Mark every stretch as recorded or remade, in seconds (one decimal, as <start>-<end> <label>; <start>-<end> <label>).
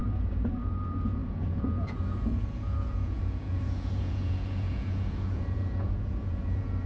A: 0.0-6.9 remade